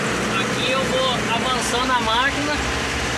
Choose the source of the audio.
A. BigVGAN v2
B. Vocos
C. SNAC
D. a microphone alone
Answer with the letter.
D